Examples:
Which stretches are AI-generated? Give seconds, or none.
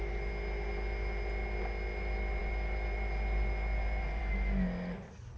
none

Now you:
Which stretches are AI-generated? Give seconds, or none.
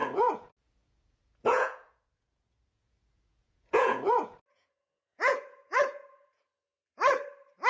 0.0-6.5 (vocoder, Vocos)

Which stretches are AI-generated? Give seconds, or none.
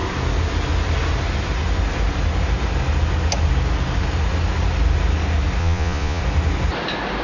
5.6-6.2 (vocoder, Vocos)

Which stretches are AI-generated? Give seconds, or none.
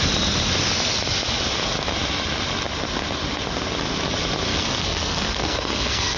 4.5-6.2 (codec, SNAC)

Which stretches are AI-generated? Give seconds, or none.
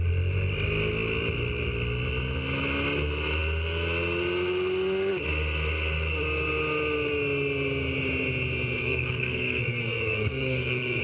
8.8-11.0 (codec, SNAC)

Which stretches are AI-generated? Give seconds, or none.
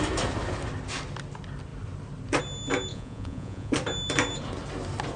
2.9-3.7 (vocoder, Vocos)